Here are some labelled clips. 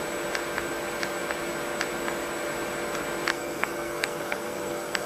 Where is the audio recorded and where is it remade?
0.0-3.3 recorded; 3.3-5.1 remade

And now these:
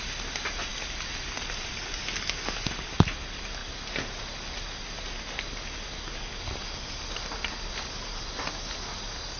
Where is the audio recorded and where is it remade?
0.0-0.7 recorded; 0.7-1.7 remade; 1.7-9.4 recorded

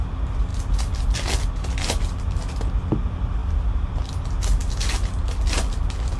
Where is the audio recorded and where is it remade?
0.0-6.2 recorded

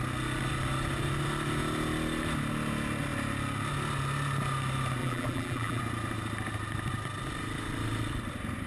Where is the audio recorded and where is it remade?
0.0-5.0 recorded; 5.0-5.8 remade; 5.8-8.7 recorded

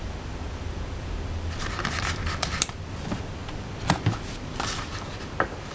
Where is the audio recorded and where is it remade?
0.0-5.7 recorded

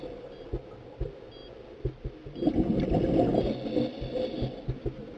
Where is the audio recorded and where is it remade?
0.0-5.2 recorded